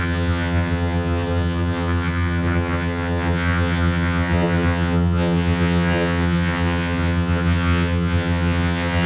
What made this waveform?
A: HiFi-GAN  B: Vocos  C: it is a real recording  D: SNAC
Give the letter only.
A